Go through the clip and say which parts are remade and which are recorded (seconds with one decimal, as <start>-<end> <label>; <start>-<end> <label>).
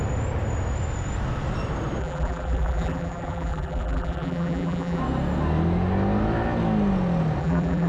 0.0-2.0 recorded; 2.0-5.0 remade; 5.0-7.4 recorded; 7.4-7.9 remade